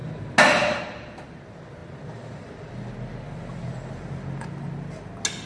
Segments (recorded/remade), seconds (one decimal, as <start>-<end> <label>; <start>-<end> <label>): 0.0-1.8 recorded; 1.8-5.1 remade; 5.1-5.5 recorded